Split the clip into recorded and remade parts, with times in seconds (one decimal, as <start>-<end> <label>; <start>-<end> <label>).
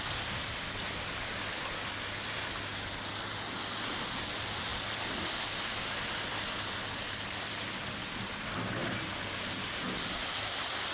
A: 0.0-10.9 recorded